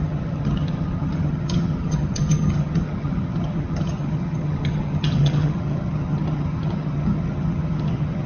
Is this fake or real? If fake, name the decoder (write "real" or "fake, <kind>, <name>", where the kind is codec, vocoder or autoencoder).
fake, vocoder, HiFi-GAN